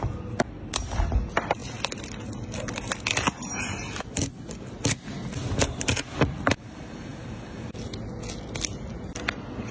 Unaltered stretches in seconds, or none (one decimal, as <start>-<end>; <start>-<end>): 0.0-9.7